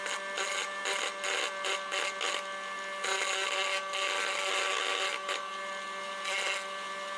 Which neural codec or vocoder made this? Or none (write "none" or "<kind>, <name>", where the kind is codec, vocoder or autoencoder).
none